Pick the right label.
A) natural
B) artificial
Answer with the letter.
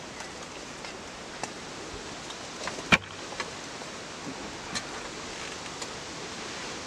A